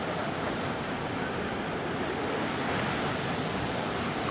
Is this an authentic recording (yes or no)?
yes